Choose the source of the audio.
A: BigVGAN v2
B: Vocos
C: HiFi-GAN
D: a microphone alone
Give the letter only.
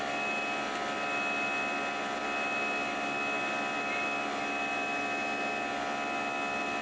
D